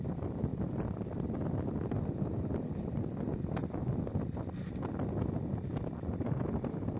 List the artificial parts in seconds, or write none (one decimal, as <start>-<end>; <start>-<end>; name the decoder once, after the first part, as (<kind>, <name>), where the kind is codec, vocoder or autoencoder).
none